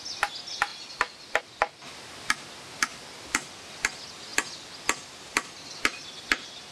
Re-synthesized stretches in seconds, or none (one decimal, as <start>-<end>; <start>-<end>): 2.9-3.5